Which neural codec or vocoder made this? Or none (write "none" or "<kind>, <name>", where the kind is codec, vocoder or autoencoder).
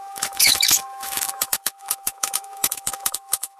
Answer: autoencoder, DAC-VAE